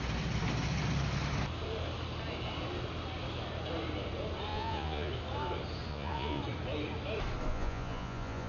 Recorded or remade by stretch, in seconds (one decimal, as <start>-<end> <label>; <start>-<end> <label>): 0.0-4.5 recorded; 4.5-5.1 remade; 5.1-5.9 recorded; 5.9-6.4 remade; 6.4-7.5 recorded; 7.5-8.5 remade